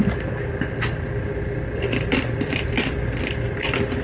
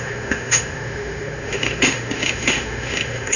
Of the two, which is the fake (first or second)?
second